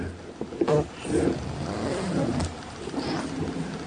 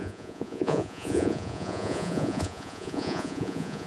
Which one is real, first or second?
first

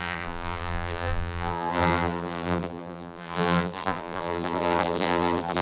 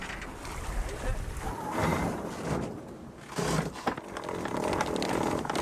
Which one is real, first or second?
second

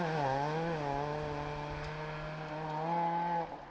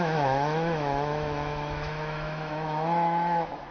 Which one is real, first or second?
first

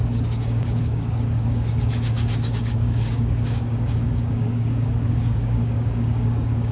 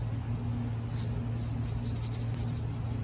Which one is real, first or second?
second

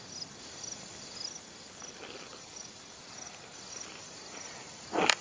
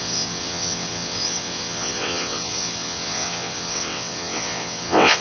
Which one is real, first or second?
first